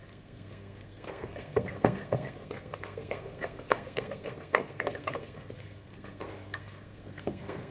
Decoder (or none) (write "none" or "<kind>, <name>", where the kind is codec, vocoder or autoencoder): codec, SNAC